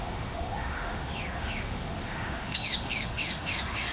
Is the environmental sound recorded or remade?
remade